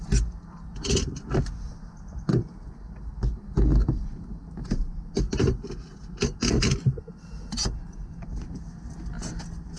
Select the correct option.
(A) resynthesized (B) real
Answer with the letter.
B